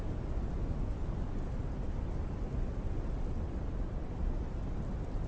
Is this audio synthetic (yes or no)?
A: no